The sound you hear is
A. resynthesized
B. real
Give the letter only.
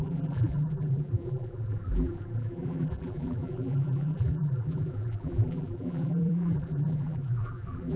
A